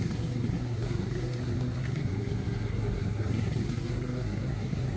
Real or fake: fake